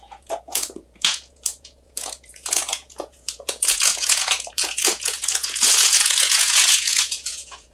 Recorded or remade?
remade